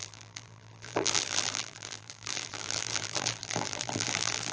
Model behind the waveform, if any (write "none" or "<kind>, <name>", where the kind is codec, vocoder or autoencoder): vocoder, BigVGAN v2